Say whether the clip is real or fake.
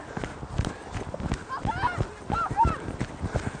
real